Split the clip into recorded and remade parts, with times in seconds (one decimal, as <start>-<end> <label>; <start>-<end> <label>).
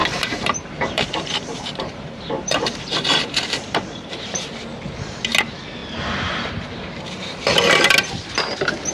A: 0.0-4.4 remade; 4.4-8.9 recorded